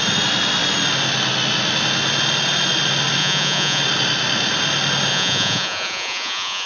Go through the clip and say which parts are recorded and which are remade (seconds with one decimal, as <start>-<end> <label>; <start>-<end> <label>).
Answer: 0.0-3.2 recorded; 3.2-3.8 remade; 3.8-5.1 recorded; 5.1-6.7 remade